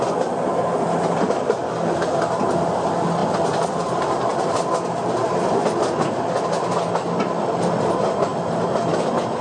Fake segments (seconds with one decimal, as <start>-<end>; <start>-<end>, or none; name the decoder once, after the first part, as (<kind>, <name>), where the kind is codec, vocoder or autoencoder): 4.3-6.7 (vocoder, BigVGAN v2)

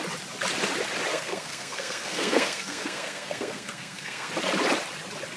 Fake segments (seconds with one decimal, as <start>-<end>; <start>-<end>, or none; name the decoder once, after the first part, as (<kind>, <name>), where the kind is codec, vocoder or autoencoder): 1.1-4.3 (codec, SNAC)

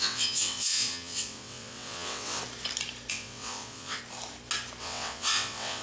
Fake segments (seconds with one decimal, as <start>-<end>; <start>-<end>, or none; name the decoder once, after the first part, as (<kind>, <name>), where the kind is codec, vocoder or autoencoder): 0.0-2.4 (vocoder, WaveNeXt); 3.1-4.0; 4.8-5.8

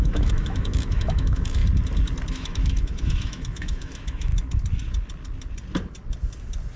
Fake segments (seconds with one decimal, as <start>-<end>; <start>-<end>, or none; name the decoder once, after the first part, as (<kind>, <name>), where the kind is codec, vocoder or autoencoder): 0.0-1.6 (autoencoder, DAC-VAE); 2.3-4.3

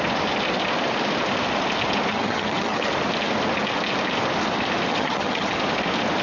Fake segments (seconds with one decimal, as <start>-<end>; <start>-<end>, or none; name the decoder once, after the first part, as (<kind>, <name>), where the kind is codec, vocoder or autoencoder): 2.1-2.9 (vocoder, HiFi-GAN); 4.9-5.5